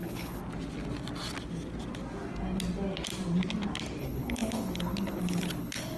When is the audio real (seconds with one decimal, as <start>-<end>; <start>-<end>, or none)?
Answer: 0.4-4.0